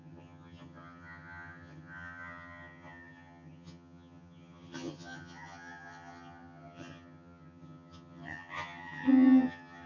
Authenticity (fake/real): fake